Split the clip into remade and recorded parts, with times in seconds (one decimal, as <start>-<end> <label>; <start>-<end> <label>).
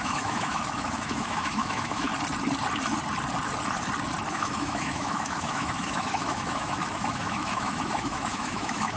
0.0-2.1 remade; 2.1-4.3 recorded; 4.3-9.0 remade